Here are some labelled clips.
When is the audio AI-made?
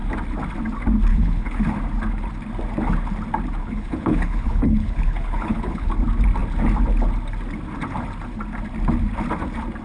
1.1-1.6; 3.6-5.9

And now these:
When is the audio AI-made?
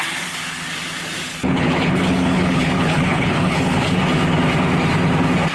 1.3-4.0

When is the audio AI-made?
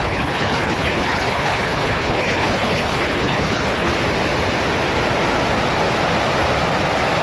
0.0-3.9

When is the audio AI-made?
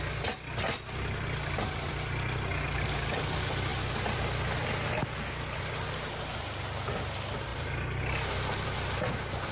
none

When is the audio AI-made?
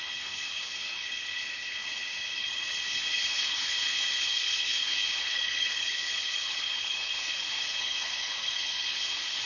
0.0-9.5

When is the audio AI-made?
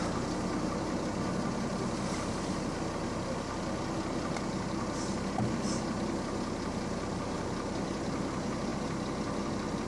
none